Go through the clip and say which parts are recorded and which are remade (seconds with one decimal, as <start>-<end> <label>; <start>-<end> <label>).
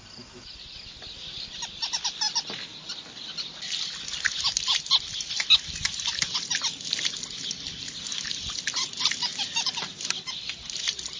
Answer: 0.0-11.2 recorded